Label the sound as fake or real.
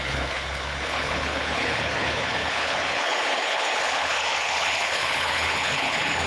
fake